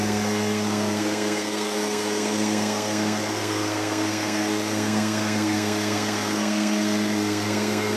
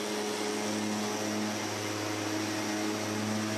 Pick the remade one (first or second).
first